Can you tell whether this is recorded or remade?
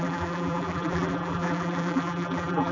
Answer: remade